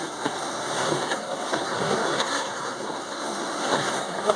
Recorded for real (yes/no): no